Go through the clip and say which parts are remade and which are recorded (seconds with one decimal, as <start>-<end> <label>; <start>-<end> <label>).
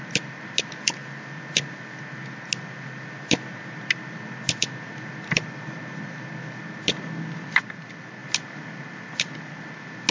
0.0-10.1 recorded